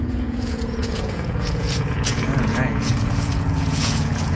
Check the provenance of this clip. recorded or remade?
remade